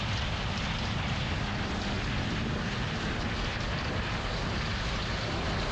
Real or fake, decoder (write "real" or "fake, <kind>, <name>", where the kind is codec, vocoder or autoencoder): real